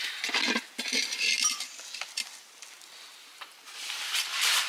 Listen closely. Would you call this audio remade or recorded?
recorded